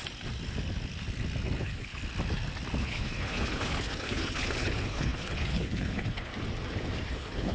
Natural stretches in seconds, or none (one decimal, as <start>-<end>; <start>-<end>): 0.0-1.6; 2.0-2.8; 6.3-7.1